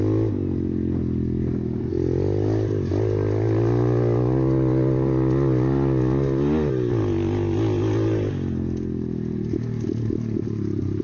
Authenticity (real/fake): real